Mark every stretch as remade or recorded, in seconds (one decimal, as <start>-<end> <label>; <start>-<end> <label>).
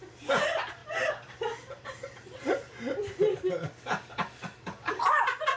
0.0-3.3 recorded; 3.3-5.0 remade; 5.0-5.6 recorded